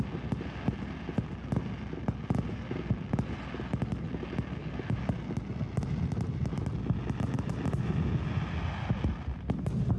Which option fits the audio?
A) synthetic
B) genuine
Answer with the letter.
B